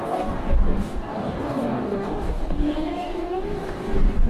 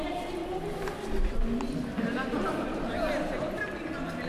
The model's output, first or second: first